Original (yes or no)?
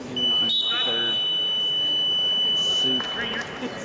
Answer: yes